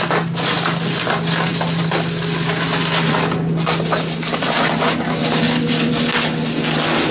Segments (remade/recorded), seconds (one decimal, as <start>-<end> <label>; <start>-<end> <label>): 0.0-1.5 recorded; 1.5-3.1 remade; 3.1-5.2 recorded; 5.2-5.8 remade; 5.8-7.1 recorded